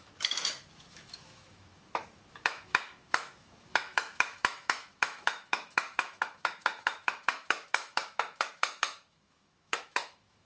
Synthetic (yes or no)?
yes